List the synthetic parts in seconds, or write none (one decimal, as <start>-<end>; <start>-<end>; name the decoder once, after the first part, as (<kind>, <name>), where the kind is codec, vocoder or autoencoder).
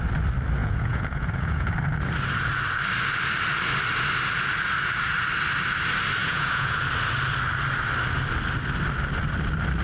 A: 0.6-1.7 (vocoder, Vocos); 6.2-6.8